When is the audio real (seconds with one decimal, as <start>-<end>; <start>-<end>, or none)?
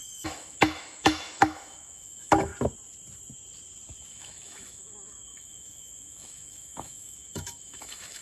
2.5-4.1